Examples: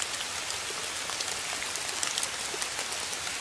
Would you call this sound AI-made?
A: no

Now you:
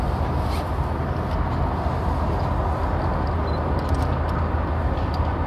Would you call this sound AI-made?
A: no